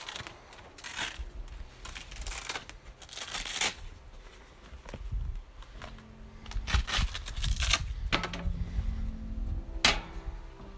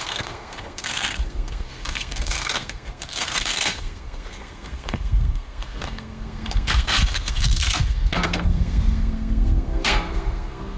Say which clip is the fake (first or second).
second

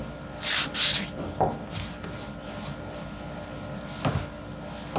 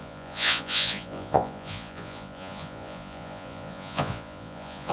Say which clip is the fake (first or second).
second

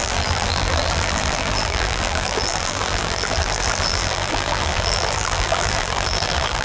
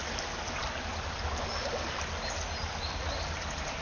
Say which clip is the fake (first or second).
first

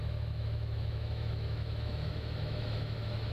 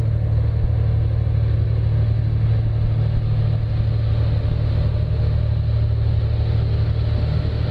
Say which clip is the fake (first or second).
first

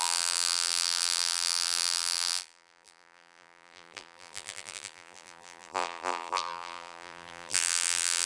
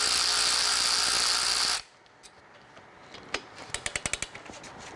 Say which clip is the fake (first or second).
first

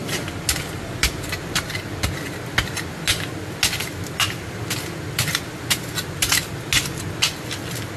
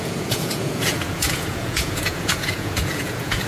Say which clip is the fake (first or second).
second